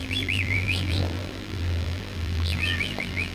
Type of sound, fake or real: fake